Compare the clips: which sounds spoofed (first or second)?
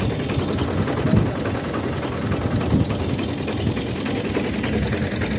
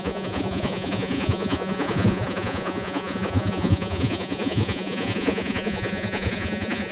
second